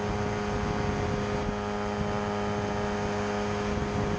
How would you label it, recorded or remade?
recorded